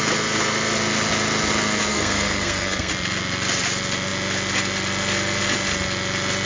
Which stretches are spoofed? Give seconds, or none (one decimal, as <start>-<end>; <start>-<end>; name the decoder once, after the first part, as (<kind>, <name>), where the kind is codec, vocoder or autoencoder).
1.9-2.9 (codec, SNAC)